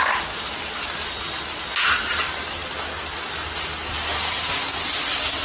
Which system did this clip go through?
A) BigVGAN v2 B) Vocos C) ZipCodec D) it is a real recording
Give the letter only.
D